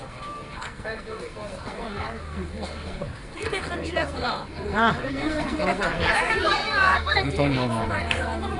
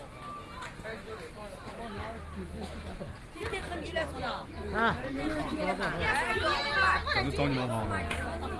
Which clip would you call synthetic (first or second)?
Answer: first